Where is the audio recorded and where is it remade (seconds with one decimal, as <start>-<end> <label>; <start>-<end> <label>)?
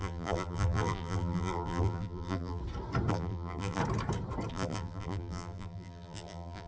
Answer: 0.0-2.6 remade; 2.6-3.1 recorded; 3.1-3.8 remade; 3.8-4.5 recorded; 4.5-6.7 remade